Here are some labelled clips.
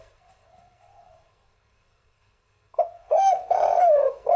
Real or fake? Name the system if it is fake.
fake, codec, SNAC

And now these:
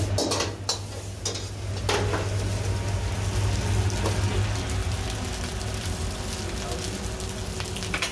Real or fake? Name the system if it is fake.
real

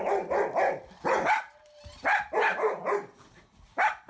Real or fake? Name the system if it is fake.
real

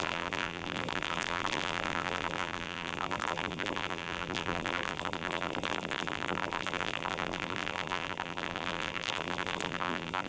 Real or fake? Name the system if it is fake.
fake, vocoder, BigVGAN v2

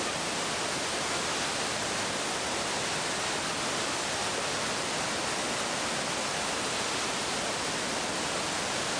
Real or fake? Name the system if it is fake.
real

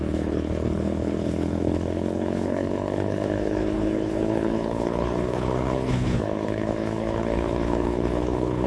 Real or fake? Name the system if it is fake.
fake, codec, HILCodec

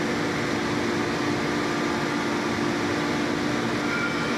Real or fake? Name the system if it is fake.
real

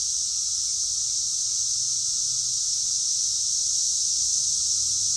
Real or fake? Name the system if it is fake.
real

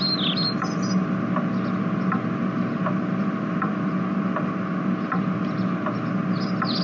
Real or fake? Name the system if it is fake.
real